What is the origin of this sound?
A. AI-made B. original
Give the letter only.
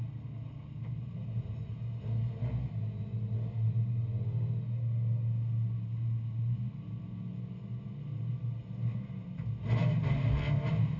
B